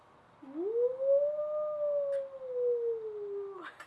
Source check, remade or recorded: recorded